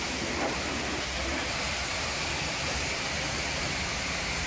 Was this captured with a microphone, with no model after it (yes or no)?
no